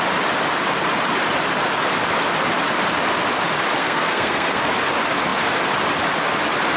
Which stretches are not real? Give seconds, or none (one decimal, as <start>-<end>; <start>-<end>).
3.8-4.6